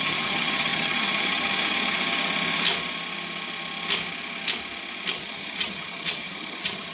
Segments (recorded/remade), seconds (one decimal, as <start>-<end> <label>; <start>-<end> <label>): 0.0-2.0 remade; 2.0-5.1 recorded; 5.1-6.9 remade